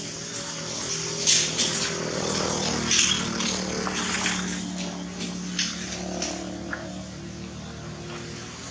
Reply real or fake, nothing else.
real